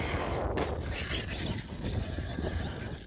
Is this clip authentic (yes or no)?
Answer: yes